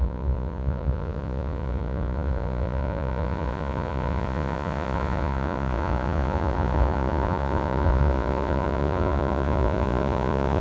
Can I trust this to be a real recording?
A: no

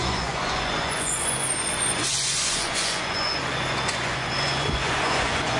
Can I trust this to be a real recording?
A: no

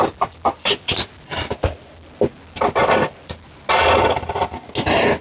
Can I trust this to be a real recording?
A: yes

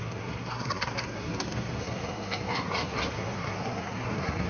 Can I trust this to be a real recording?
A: no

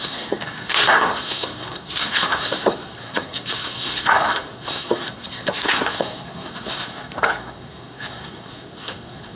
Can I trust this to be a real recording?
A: no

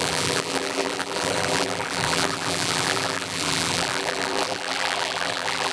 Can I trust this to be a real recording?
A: no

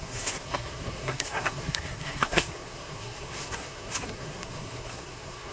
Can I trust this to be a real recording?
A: no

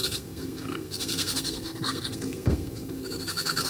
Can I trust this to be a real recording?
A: no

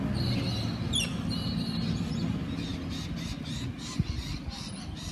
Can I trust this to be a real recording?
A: yes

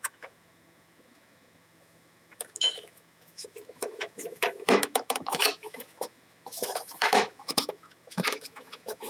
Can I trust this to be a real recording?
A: no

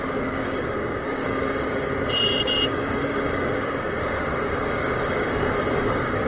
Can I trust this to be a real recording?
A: no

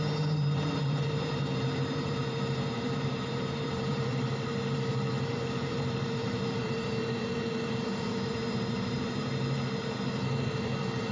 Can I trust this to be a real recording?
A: no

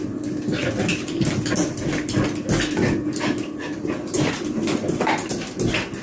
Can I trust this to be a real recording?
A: yes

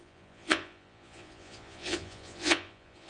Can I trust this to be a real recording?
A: no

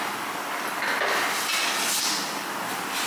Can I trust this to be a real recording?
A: yes